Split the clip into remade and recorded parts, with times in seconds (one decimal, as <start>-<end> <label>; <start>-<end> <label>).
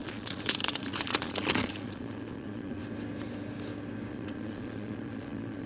0.0-2.8 remade; 2.8-4.1 recorded; 4.1-5.7 remade